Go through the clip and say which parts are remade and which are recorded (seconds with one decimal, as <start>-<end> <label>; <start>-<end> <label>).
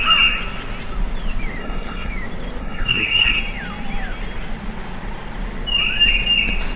0.0-1.6 recorded; 1.6-2.1 remade; 2.1-2.6 recorded; 2.6-3.4 remade; 3.4-6.8 recorded